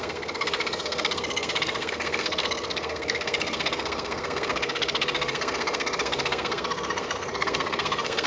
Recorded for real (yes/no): no